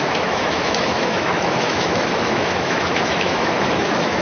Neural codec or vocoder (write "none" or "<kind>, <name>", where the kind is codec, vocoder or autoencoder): autoencoder, DAC-VAE